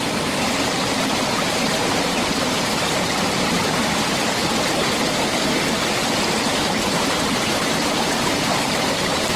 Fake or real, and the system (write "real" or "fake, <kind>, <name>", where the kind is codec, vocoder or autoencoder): fake, vocoder, BigVGAN v2